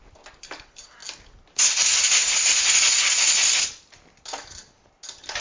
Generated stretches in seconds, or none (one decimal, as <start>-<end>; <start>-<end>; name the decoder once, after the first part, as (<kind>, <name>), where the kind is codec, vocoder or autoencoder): none